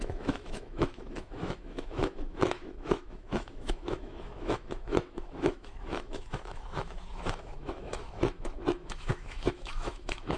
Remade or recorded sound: remade